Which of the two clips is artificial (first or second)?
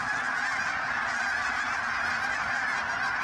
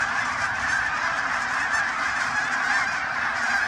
second